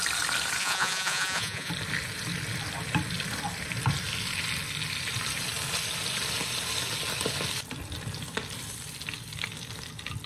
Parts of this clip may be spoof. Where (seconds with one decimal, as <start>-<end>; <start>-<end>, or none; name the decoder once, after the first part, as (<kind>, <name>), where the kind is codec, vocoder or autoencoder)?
0.6-1.7 (vocoder, Vocos)